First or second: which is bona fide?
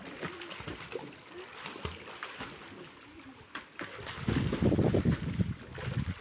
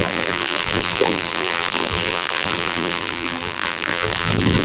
first